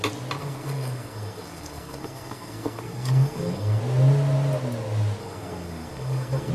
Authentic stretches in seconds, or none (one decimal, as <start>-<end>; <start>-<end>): 0.0-0.4; 3.8-5.2